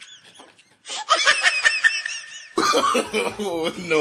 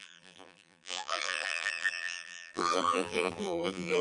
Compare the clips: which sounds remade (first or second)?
second